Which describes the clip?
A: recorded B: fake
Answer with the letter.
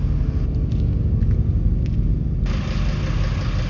A